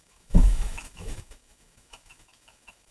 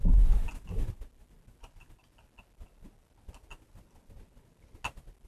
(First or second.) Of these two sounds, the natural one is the second